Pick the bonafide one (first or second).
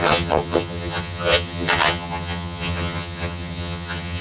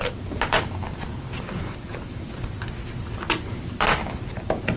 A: second